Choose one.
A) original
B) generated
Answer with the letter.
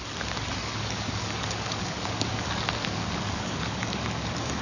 B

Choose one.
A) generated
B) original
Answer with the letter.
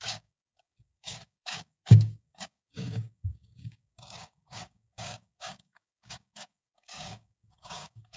A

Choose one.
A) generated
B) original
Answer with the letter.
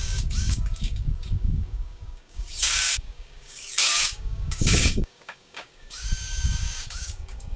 A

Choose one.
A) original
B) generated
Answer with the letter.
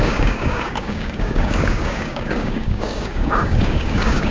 B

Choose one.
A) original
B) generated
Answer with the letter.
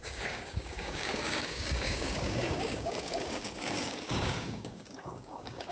B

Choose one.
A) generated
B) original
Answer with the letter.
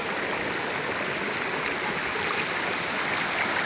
B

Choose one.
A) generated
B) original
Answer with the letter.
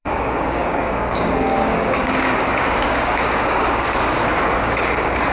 A